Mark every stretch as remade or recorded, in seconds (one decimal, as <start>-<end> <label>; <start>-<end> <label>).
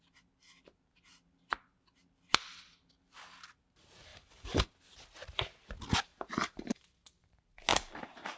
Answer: 0.0-4.1 recorded; 4.1-4.7 remade; 4.7-6.1 recorded; 6.1-6.8 remade; 6.8-7.7 recorded; 7.7-8.4 remade